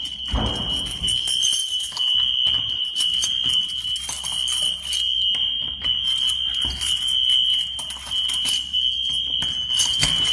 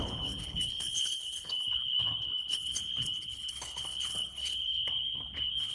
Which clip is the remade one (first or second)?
second